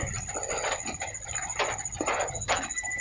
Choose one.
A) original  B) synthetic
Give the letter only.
A